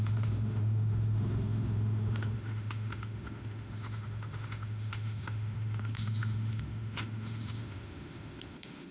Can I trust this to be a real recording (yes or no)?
no